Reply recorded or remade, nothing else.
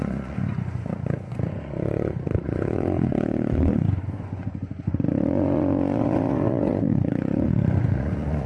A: remade